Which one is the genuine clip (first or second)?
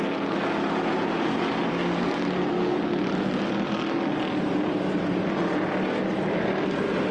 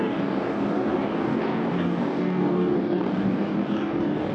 first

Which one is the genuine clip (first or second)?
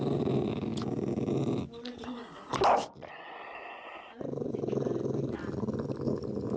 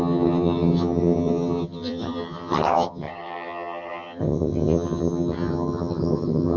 first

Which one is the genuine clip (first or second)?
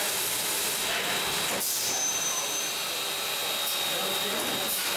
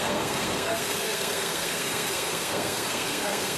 first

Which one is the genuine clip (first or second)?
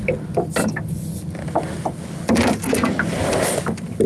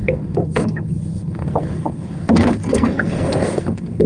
first